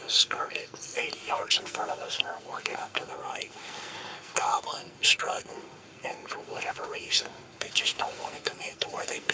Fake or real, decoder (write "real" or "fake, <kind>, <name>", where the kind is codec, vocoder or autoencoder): fake, codec, SNAC